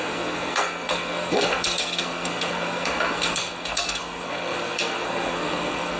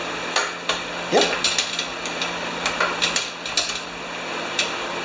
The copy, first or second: first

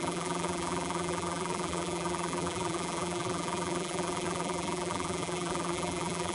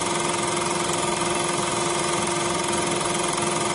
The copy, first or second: first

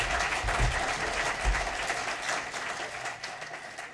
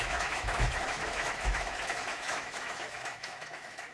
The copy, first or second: second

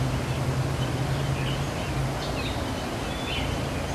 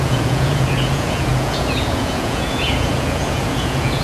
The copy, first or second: second